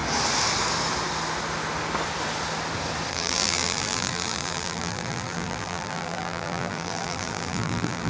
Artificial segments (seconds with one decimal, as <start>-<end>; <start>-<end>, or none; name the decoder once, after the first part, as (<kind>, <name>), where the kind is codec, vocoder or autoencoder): 3.1-8.1 (vocoder, BigVGAN v2)